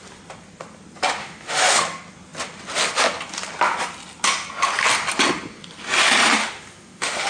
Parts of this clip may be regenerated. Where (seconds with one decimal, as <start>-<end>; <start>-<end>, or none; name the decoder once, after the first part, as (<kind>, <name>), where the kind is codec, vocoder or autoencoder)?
1.2-1.8 (autoencoder, DAC-VAE); 6.4-7.3

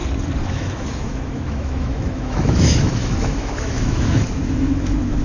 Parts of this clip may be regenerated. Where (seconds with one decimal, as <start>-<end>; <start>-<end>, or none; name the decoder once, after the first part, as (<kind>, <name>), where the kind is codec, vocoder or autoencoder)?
0.5-5.2 (autoencoder, DAC-VAE)

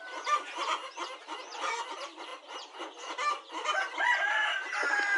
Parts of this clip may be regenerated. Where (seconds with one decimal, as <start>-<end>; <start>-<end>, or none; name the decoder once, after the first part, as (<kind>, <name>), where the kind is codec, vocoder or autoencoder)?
none

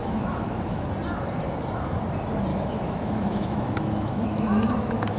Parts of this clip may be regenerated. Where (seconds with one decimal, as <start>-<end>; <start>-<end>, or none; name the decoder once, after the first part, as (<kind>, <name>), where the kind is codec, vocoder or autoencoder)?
0.0-0.9 (autoencoder, DAC-VAE); 2.5-5.2

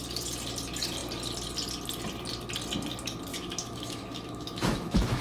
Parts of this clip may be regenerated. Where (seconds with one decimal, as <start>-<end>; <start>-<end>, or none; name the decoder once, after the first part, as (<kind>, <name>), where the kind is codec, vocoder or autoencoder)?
3.3-5.2 (autoencoder, DAC-VAE)

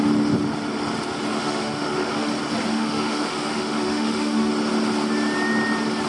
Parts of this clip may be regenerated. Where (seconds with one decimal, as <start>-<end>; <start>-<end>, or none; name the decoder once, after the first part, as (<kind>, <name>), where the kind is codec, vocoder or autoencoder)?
1.3-2.3 (autoencoder, DAC-VAE); 2.7-4.5

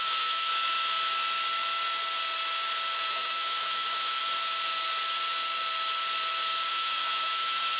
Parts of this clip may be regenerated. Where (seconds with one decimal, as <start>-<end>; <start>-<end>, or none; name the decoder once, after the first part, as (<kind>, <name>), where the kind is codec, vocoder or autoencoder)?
0.0-0.5 (autoencoder, DAC-VAE); 3.1-4.2; 6.7-7.8